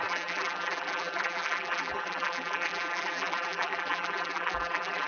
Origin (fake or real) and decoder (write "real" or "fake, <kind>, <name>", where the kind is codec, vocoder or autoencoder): fake, vocoder, BigVGAN v2